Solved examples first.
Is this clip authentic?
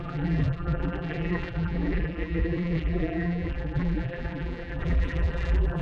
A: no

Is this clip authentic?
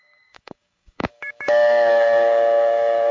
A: no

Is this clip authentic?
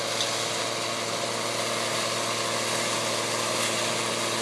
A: yes